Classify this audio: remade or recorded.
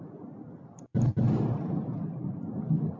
recorded